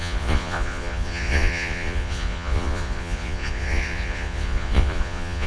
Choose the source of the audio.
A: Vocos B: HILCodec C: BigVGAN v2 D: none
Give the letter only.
A